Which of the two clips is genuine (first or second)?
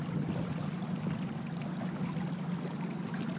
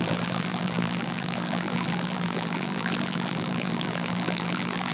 first